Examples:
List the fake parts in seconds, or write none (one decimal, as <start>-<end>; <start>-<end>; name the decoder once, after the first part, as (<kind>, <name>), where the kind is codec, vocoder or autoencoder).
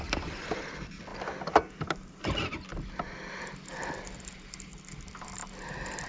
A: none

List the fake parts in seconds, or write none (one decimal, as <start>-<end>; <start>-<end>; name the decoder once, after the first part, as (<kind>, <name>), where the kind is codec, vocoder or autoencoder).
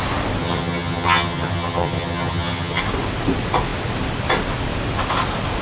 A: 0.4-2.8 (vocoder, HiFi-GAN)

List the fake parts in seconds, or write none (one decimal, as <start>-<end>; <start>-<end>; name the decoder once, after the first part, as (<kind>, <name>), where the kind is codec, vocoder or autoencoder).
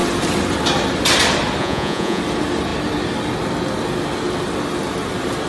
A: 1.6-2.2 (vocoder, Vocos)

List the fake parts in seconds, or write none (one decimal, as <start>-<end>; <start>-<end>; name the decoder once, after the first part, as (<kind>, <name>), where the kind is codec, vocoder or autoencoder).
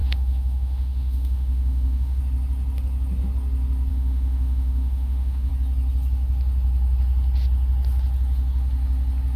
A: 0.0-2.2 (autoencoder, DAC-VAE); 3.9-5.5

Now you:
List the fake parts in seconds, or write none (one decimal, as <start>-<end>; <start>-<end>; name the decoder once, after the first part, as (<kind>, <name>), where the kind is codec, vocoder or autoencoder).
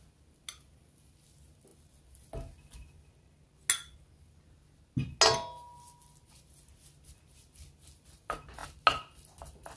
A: none